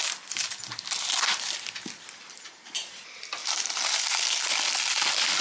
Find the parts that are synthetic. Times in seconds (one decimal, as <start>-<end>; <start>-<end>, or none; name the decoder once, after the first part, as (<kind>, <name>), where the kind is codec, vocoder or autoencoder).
0.4-2.7 (vocoder, BigVGAN v2); 3.4-4.0